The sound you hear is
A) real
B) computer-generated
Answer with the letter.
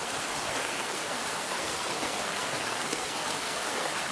B